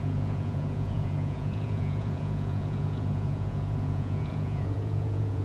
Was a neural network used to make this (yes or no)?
yes